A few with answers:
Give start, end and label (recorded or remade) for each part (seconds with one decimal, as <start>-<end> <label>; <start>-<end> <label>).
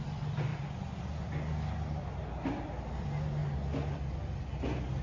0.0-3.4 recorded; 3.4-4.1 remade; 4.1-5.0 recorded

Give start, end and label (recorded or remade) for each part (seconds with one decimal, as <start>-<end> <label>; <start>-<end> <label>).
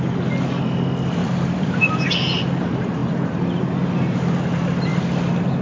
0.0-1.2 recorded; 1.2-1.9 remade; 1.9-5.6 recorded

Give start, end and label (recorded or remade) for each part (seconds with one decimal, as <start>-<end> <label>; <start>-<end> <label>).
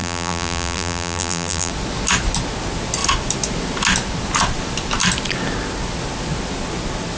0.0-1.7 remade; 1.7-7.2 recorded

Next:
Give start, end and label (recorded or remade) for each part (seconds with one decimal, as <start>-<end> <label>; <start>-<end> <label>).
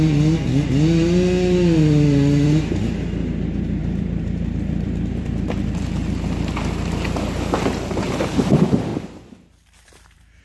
0.0-3.8 recorded; 3.8-5.7 remade; 5.7-8.9 recorded; 8.9-10.4 remade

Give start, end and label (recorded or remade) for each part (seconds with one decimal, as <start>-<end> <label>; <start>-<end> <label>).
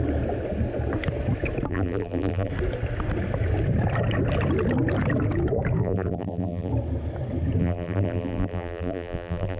0.0-1.7 recorded; 1.7-2.5 remade; 2.5-5.8 recorded; 5.8-6.7 remade; 6.7-7.6 recorded; 7.6-9.6 remade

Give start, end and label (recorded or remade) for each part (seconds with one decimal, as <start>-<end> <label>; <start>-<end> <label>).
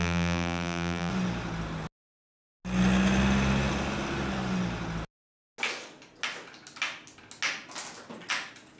0.0-1.1 remade; 1.1-8.8 recorded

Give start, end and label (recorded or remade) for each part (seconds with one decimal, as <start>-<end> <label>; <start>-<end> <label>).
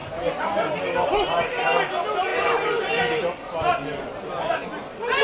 0.0-0.8 remade; 0.8-5.2 recorded